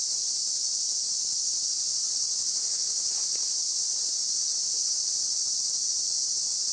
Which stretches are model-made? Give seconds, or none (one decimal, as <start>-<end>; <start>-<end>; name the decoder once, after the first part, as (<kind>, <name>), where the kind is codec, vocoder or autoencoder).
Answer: none